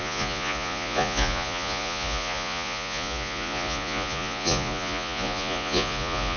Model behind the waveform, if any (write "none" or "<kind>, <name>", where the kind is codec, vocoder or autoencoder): vocoder, Vocos